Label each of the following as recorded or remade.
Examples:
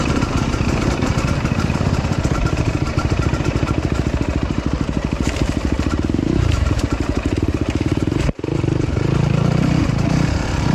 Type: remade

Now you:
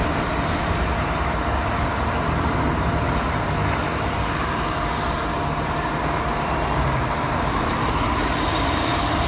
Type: remade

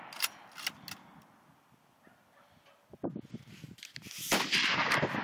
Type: recorded